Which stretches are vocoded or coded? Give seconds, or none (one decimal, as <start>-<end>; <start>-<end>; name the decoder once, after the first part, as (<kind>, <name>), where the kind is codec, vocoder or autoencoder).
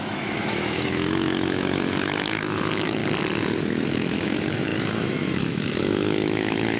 0.0-3.0 (autoencoder, DAC-VAE); 3.6-6.8